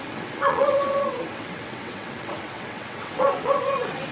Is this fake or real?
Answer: fake